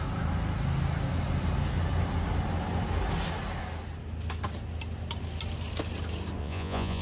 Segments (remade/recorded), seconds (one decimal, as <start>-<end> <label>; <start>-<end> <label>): 0.0-6.4 recorded; 6.4-7.0 remade